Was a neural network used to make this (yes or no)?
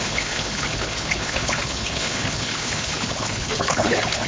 yes